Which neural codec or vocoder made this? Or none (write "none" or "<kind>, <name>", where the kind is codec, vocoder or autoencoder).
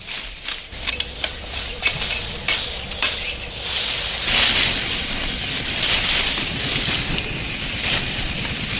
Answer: none